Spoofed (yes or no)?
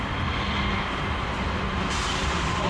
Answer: no